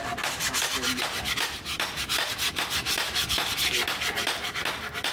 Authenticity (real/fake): real